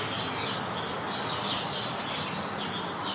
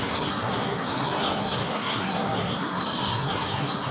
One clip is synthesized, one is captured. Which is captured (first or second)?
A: first